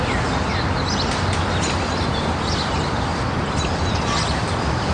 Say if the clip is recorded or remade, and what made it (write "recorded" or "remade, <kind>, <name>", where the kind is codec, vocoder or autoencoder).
recorded